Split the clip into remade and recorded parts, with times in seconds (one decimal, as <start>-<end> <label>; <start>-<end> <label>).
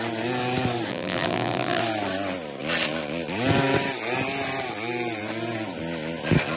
0.0-0.9 recorded; 0.9-1.8 remade; 1.8-6.6 recorded